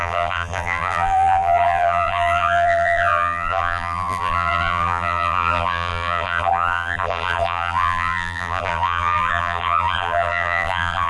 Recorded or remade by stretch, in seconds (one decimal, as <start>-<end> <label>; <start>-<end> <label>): 0.0-11.1 remade

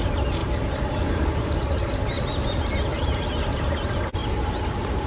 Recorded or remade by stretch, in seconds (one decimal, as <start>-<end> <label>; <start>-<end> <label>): 0.0-5.1 recorded

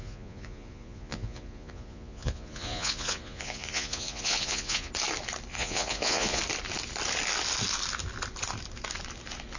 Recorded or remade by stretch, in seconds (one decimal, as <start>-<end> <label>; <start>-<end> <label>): 0.0-4.9 remade; 4.9-5.5 recorded; 5.5-6.4 remade; 6.4-9.6 recorded

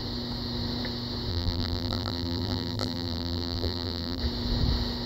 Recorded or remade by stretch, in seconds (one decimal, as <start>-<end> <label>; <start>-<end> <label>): 0.0-1.3 recorded; 1.3-4.2 remade; 4.2-5.1 recorded

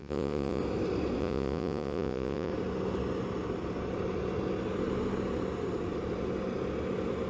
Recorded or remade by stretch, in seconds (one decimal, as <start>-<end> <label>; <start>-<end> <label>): 0.0-0.6 remade; 0.6-1.2 recorded; 1.2-2.5 remade; 2.5-7.3 recorded

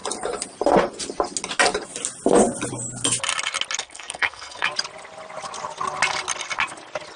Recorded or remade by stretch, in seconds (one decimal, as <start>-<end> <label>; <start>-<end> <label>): 0.0-3.8 recorded; 3.8-4.7 remade; 4.7-7.2 recorded